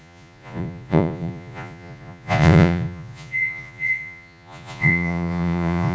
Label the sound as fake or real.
fake